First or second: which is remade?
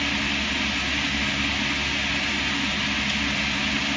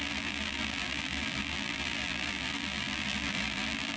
second